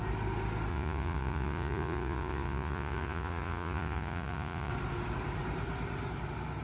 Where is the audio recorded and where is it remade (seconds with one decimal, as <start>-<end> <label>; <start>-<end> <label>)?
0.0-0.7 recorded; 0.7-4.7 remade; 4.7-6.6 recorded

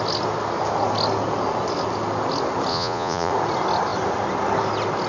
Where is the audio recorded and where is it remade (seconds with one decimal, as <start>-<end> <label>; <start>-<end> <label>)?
0.0-2.7 recorded; 2.7-3.3 remade; 3.3-5.1 recorded

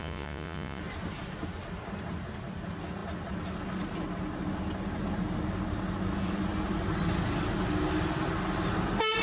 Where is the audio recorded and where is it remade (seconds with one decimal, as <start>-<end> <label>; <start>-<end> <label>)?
0.0-0.8 remade; 0.8-9.2 recorded